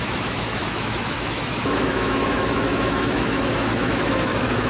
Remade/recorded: remade